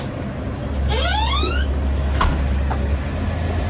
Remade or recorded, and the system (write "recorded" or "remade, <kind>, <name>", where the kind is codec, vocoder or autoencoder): recorded